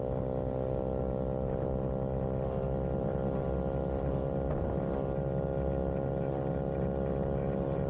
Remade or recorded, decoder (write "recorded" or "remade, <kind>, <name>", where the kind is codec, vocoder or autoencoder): recorded